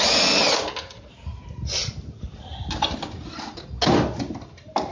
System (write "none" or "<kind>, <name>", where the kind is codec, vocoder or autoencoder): none